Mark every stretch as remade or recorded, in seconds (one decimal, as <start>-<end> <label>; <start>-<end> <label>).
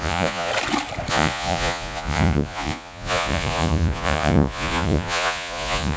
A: 0.0-0.5 remade; 0.5-1.1 recorded; 1.1-6.0 remade